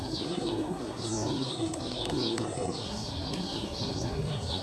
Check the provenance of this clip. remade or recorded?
remade